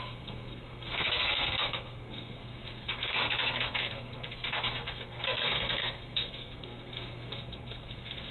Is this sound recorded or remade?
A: remade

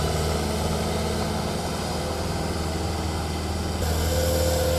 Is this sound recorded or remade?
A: recorded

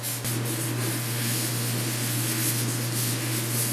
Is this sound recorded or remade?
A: recorded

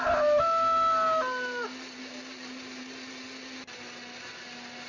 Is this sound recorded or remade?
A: recorded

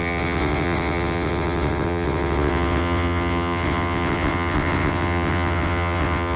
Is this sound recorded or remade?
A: remade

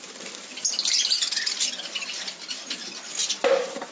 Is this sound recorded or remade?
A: recorded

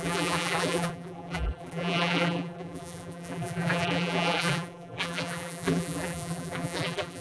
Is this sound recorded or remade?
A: remade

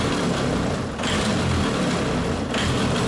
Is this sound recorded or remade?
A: recorded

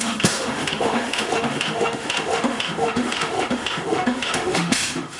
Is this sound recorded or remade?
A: remade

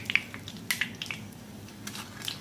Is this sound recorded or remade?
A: recorded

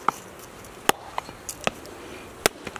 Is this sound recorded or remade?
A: recorded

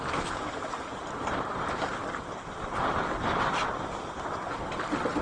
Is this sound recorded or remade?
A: recorded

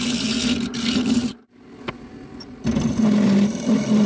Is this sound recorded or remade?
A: recorded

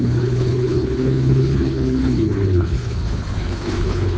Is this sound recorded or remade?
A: remade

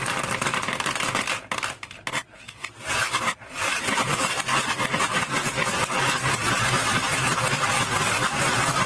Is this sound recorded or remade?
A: recorded